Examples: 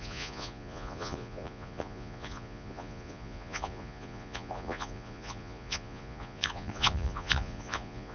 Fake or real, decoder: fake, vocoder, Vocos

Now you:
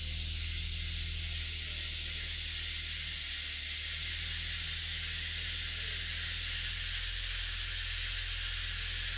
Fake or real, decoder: real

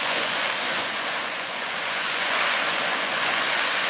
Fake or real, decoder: fake, vocoder, Vocos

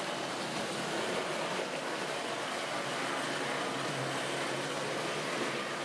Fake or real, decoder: real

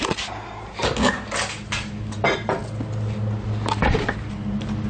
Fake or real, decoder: real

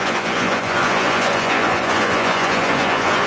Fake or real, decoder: fake, vocoder, Vocos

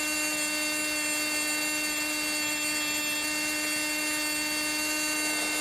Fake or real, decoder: real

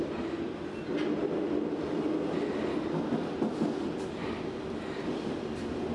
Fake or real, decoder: real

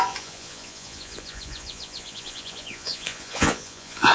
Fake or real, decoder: fake, vocoder, Vocos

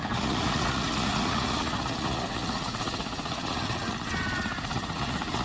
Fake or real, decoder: fake, vocoder, Vocos